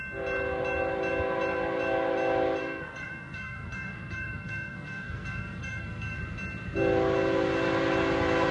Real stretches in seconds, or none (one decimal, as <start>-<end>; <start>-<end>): 0.0-2.6; 6.2-8.5